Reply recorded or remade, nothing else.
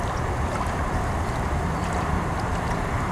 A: remade